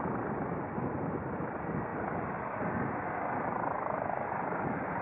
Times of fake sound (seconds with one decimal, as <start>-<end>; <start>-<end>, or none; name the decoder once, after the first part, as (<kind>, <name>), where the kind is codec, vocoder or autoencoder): none